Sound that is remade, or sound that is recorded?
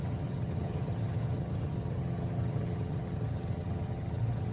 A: remade